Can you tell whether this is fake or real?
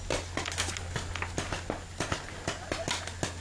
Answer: real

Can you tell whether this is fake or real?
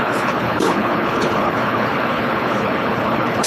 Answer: fake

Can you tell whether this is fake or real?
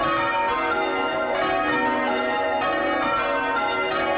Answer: real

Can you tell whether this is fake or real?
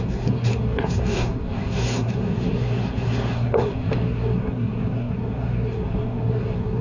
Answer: fake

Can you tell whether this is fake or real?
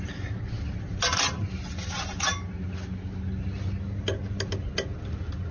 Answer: real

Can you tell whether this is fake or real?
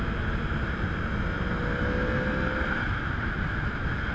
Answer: real